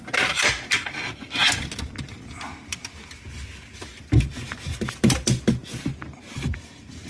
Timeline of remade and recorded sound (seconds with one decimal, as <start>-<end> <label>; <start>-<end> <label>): 0.0-7.1 recorded